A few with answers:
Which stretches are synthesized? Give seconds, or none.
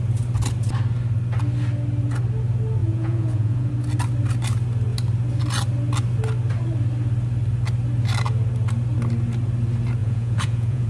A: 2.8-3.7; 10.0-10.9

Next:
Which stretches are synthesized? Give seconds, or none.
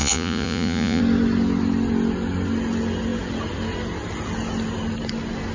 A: 0.0-1.0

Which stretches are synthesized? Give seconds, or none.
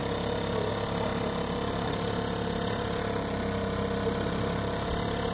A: none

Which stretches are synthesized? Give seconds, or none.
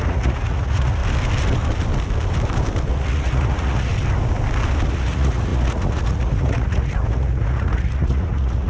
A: 0.0-1.0; 2.9-3.9; 4.9-8.7